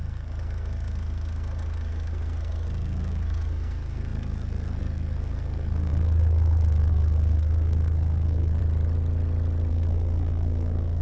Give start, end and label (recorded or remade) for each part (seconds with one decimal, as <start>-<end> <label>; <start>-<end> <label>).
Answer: 0.0-8.6 remade; 8.6-9.7 recorded; 9.7-11.0 remade